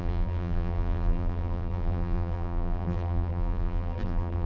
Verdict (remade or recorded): remade